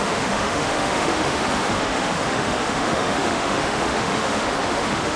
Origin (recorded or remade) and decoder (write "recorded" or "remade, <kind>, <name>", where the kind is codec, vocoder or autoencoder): remade, autoencoder, DAC-VAE